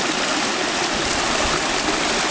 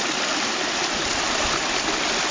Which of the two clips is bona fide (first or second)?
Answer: first